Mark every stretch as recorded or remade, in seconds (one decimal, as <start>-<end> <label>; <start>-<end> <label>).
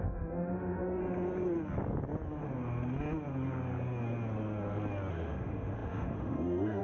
0.0-1.0 remade; 1.0-5.1 recorded; 5.1-6.8 remade